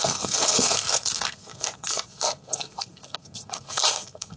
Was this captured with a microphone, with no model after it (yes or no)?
no